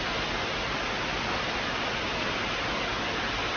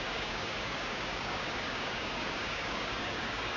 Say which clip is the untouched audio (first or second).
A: first